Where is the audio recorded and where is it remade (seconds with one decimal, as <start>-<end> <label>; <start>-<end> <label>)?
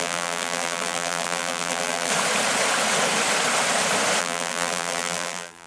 0.0-2.1 remade; 2.1-4.2 recorded; 4.2-5.7 remade